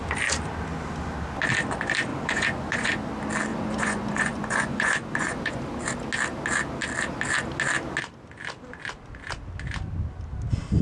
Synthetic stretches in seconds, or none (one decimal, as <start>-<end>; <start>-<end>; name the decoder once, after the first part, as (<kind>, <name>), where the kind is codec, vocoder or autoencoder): 2.1-3.0 (vocoder, Vocos); 3.5-5.6